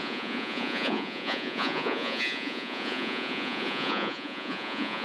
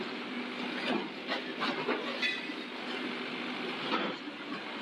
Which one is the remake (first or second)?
first